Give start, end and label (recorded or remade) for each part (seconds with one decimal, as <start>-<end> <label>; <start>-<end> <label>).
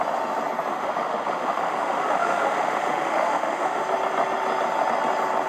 0.0-0.7 recorded; 0.7-3.8 remade; 3.8-5.5 recorded